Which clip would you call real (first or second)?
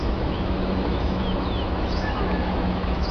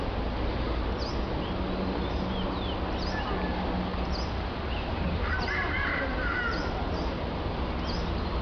second